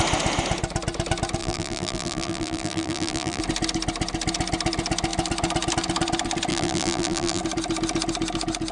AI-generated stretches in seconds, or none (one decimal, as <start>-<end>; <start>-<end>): 1.4-3.4; 6.5-7.4